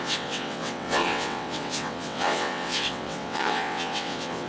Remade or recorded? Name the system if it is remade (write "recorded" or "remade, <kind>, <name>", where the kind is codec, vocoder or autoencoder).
remade, vocoder, WaveNeXt